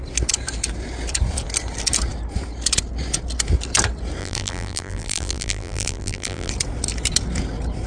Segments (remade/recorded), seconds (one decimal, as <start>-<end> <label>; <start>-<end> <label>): 0.0-4.2 recorded; 4.2-6.5 remade; 6.5-7.9 recorded